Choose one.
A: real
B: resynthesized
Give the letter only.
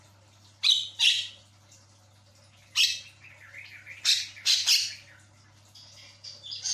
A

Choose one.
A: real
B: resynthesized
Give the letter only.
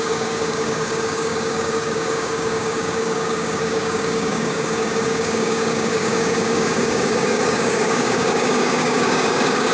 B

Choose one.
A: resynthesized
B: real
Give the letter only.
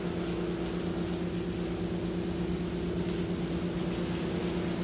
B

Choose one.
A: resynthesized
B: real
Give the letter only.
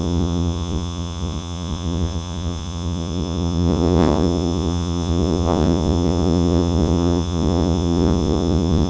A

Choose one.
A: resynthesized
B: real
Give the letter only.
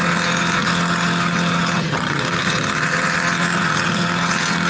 A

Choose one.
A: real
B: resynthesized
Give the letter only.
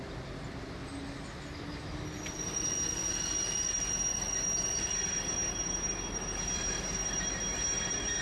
A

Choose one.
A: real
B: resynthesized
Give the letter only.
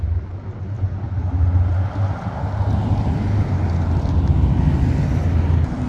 A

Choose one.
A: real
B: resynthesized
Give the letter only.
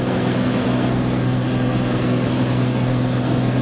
B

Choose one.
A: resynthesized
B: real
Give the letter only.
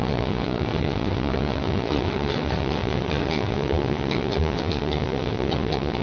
A